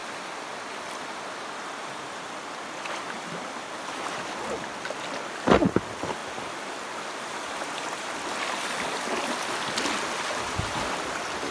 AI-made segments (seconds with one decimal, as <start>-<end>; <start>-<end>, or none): none